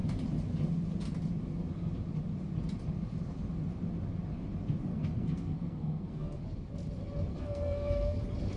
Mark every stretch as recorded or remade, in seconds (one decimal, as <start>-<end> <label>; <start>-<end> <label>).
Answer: 0.0-4.9 recorded; 4.9-6.4 remade; 6.4-7.3 recorded; 7.3-8.2 remade; 8.2-8.6 recorded